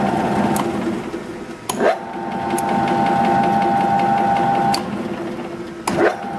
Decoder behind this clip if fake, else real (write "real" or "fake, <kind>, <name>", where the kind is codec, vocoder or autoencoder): real